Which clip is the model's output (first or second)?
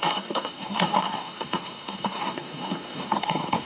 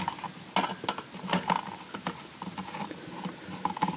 first